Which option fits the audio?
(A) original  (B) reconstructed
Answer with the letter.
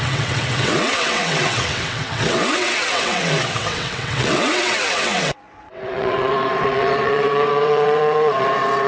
B